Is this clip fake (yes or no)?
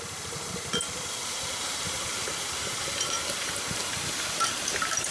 yes